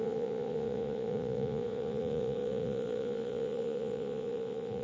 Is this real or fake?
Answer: fake